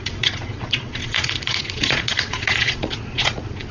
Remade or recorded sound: remade